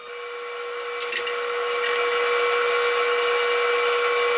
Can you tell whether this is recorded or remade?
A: recorded